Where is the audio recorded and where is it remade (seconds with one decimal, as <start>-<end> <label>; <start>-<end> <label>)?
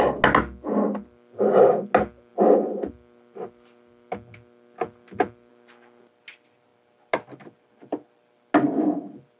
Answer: 0.0-9.4 recorded